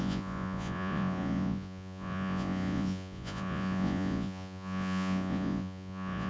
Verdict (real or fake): fake